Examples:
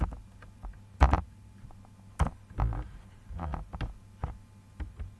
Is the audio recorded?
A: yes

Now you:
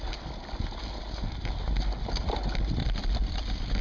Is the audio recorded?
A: yes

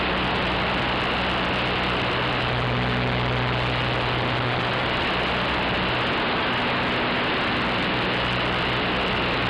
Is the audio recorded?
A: yes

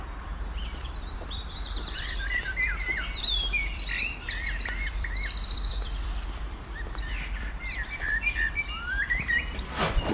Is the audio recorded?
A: no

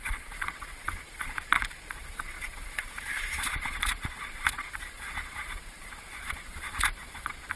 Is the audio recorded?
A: no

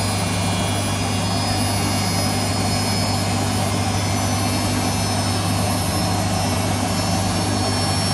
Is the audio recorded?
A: yes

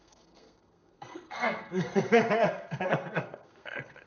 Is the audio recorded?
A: no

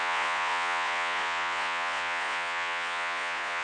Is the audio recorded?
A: no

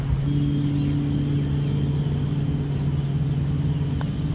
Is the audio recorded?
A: yes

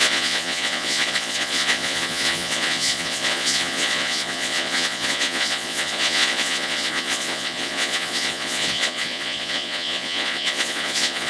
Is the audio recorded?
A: no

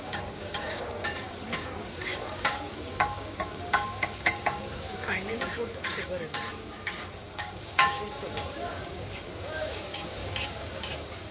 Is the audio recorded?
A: no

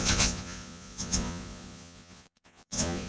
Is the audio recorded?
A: no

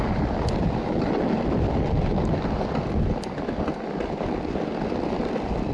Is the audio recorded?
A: yes